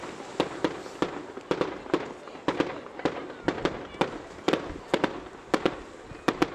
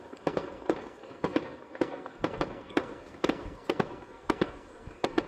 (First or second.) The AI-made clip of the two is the second